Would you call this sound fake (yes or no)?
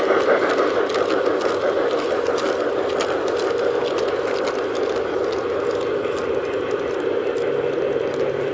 no